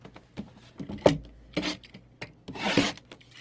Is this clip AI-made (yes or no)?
no